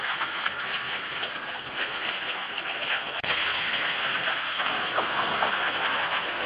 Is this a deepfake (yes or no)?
yes